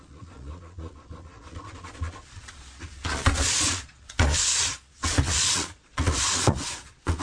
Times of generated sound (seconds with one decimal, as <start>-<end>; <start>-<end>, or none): 0.0-7.2